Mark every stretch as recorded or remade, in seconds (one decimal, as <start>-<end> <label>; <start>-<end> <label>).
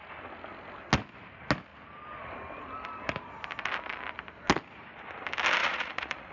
0.0-5.6 recorded; 5.6-6.3 remade